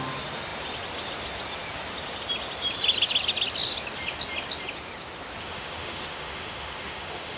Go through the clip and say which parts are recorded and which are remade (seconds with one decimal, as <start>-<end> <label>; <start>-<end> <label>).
0.0-5.4 recorded; 5.4-7.4 remade